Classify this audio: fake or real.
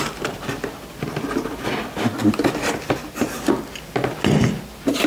real